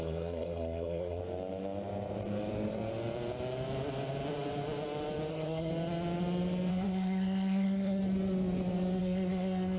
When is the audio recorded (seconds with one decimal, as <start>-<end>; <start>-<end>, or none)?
1.2-5.3; 5.7-6.7; 8.0-9.0